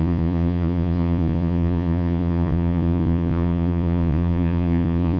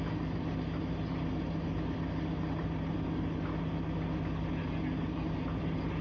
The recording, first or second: second